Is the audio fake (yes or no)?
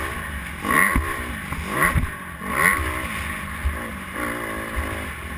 no